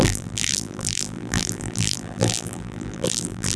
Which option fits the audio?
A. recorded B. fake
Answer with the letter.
B